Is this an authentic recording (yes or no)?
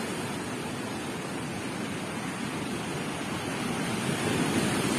yes